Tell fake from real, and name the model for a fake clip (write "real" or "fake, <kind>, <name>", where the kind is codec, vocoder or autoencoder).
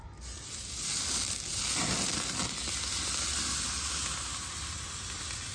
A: real